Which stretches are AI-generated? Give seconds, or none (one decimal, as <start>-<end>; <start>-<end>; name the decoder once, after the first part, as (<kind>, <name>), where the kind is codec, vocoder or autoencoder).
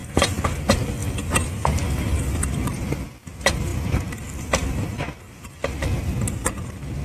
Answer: 0.6-3.7 (vocoder, BigVGAN v2); 6.3-7.0